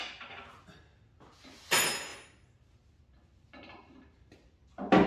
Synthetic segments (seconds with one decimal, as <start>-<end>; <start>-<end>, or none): none